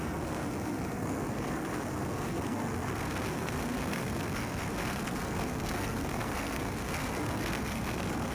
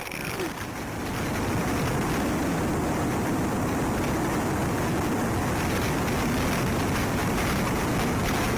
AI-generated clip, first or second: first